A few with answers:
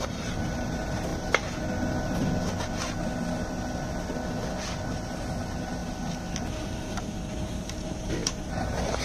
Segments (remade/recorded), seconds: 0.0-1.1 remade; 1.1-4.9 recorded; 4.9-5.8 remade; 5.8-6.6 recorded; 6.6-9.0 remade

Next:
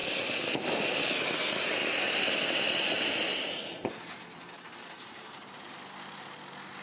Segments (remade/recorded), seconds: 0.0-6.8 recorded

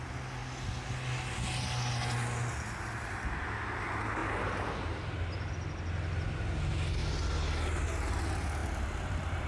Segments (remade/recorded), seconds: 0.0-9.5 recorded

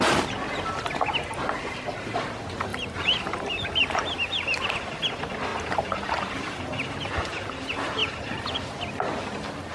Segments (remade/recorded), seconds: 0.0-2.7 recorded; 2.7-4.0 remade; 4.0-5.5 recorded; 5.5-6.1 remade; 6.1-8.0 recorded; 8.0-8.6 remade; 8.6-9.7 recorded